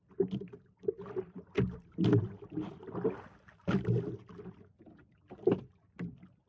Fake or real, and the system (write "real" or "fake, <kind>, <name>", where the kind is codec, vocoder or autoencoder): real